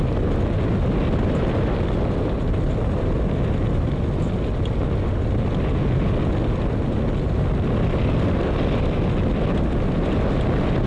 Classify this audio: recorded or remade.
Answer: recorded